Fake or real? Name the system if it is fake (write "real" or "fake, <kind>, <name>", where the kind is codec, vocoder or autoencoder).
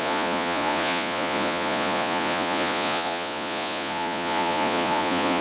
fake, vocoder, Vocos